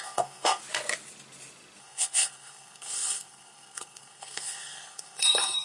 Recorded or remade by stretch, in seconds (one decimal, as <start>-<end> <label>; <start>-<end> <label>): 0.0-0.6 remade; 0.6-1.8 recorded; 1.8-5.6 remade